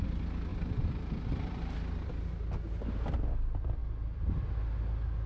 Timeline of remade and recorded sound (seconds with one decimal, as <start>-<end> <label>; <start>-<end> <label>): 0.0-0.5 recorded; 0.5-2.5 remade; 2.5-3.8 recorded; 3.8-4.4 remade; 4.4-5.3 recorded